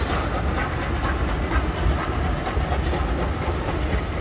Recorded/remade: recorded